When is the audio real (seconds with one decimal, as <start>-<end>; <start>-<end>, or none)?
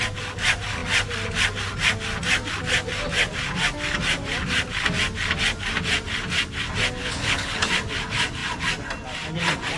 0.0-7.0; 7.7-9.8